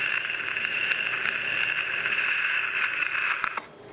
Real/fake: real